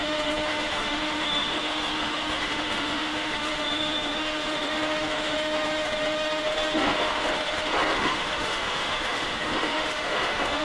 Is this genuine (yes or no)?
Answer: no